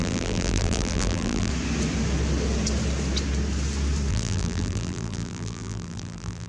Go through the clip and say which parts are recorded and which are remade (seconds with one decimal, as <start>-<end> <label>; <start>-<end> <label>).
0.0-1.5 remade; 1.5-4.1 recorded; 4.1-6.5 remade